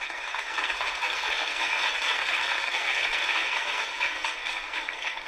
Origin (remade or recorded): remade